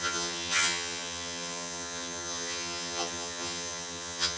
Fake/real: fake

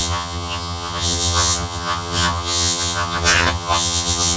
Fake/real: fake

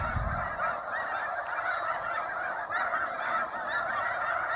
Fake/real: real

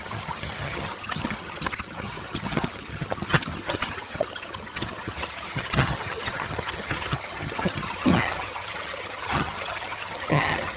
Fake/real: fake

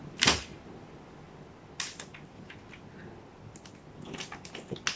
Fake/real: real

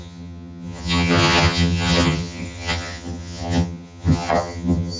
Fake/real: fake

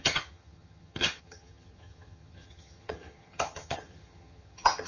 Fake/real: fake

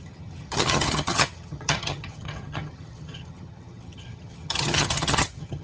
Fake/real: fake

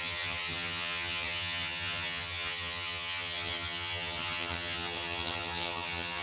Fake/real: fake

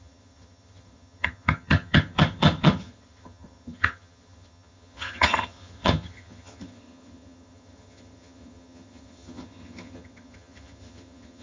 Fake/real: fake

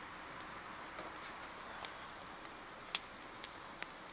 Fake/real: real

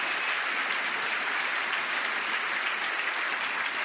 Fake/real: real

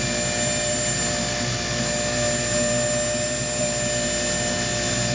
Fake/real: real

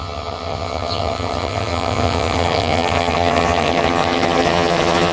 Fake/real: fake